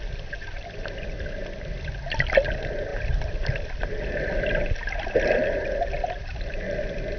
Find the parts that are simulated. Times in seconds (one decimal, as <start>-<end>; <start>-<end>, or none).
none